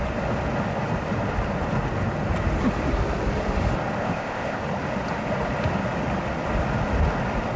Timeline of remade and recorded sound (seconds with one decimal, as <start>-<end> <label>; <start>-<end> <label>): 0.0-4.0 recorded; 4.0-4.6 remade; 4.6-7.6 recorded